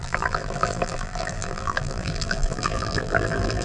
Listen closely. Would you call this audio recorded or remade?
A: remade